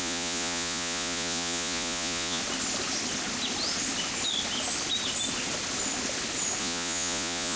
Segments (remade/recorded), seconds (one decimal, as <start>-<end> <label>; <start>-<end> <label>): 0.0-2.4 remade; 2.4-6.6 recorded; 6.6-7.6 remade